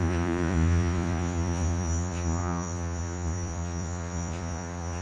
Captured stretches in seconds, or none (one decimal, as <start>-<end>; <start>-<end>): none